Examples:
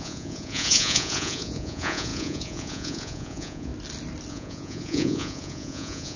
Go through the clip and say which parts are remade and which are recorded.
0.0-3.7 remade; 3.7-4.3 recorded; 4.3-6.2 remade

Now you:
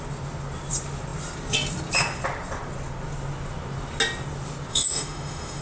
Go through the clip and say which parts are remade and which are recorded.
0.0-4.7 recorded; 4.7-5.6 remade

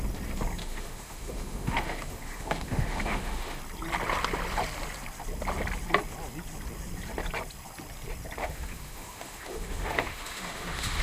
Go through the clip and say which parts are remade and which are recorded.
0.0-0.6 recorded; 0.6-3.6 remade; 3.6-8.4 recorded; 8.4-11.0 remade